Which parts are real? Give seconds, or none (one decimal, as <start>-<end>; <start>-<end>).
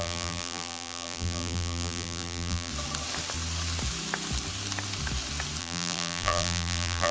2.7-5.6